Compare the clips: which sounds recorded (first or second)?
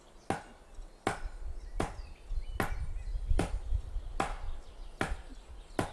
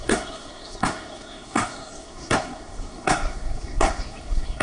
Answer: first